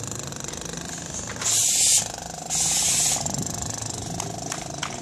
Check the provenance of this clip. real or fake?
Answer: real